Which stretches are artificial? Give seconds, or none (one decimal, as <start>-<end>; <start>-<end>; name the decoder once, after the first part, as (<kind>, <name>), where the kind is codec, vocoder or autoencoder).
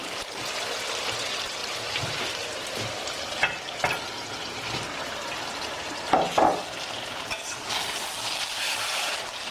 none